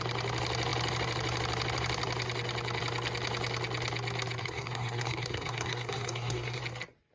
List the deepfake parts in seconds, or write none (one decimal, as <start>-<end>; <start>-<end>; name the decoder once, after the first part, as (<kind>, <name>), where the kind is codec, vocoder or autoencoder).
4.4-6.6 (codec, SNAC)